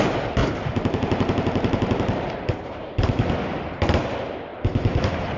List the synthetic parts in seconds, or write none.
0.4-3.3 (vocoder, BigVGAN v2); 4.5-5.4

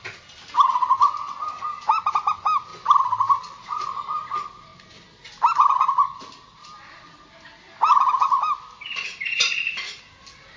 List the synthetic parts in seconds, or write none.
2.7-3.4 (vocoder, BigVGAN v2); 6.6-10.0

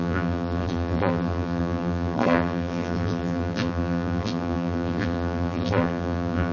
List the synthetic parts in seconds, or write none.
0.0-6.5 (vocoder, BigVGAN v2)

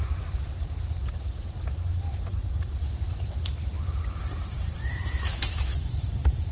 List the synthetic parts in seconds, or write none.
0.0-6.5 (vocoder, BigVGAN v2)

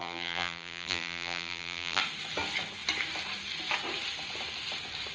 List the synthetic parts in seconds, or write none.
0.0-2.0 (vocoder, BigVGAN v2)